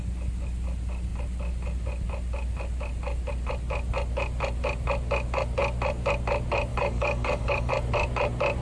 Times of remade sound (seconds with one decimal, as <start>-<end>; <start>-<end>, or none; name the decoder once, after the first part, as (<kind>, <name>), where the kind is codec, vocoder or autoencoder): 6.7-7.7 (codec, DAC)